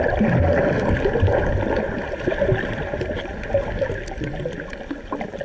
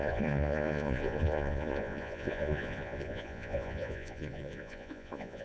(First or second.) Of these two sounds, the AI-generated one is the second